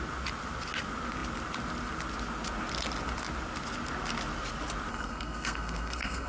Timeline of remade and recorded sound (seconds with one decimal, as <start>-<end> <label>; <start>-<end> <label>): 0.0-4.9 recorded; 4.9-6.3 remade